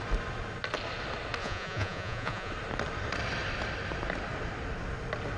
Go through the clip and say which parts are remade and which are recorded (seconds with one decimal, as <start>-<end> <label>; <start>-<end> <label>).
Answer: 0.0-1.4 recorded; 1.4-2.5 remade; 2.5-5.4 recorded